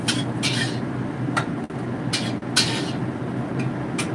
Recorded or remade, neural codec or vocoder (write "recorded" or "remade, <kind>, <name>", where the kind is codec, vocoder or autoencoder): recorded